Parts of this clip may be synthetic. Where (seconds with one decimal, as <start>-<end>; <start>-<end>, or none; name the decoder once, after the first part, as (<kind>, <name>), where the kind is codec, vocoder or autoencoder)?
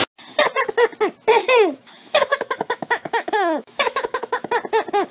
1.4-4.5 (autoencoder, DAC-VAE)